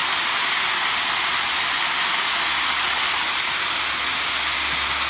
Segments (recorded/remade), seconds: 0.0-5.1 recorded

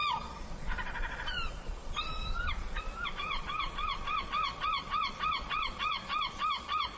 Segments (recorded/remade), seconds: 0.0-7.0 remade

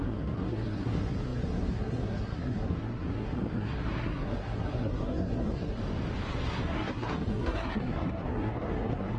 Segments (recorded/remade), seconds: 0.0-5.8 remade; 5.8-6.3 recorded; 6.3-9.2 remade

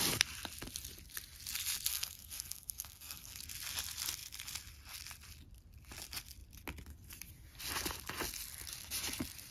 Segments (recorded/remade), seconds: 0.0-1.9 recorded; 1.9-3.4 remade; 3.4-9.5 recorded

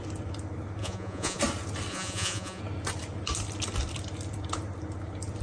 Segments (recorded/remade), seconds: 0.0-0.8 recorded; 0.8-1.4 remade; 1.4-1.9 recorded; 1.9-2.6 remade; 2.6-5.4 recorded